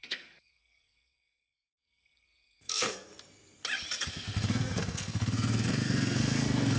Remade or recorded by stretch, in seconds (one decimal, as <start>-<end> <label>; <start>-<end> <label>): 0.0-3.1 remade; 3.1-4.1 recorded; 4.1-6.8 remade